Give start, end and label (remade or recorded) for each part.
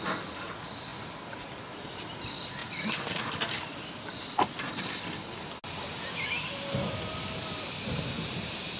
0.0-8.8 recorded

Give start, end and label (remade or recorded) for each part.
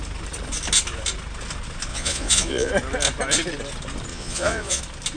0.0-1.9 recorded; 1.9-2.7 remade; 2.7-4.1 recorded; 4.1-4.8 remade; 4.8-5.2 recorded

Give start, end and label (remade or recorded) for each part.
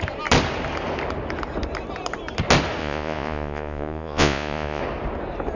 0.0-2.8 recorded; 2.8-4.8 remade; 4.8-5.5 recorded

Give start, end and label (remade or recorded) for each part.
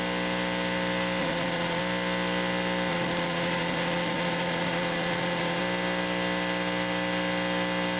0.0-1.2 recorded; 1.2-1.8 remade; 1.8-2.9 recorded; 2.9-5.6 remade; 5.6-8.0 recorded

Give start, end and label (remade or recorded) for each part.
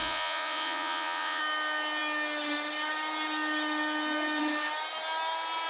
0.0-1.4 remade; 1.4-5.7 recorded